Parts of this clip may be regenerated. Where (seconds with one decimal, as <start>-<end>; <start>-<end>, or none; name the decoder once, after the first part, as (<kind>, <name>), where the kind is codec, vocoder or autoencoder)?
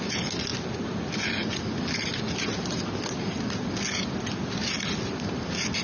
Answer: none